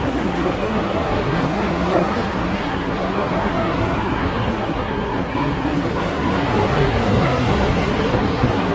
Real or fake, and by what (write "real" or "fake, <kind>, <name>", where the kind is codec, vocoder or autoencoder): fake, codec, SNAC